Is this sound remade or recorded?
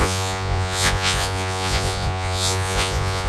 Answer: remade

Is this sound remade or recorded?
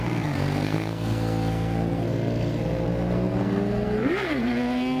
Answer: remade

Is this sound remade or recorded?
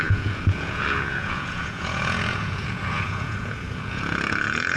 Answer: remade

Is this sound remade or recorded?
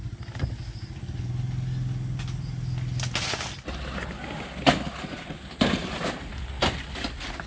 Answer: recorded